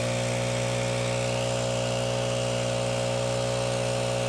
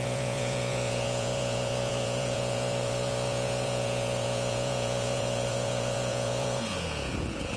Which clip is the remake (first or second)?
second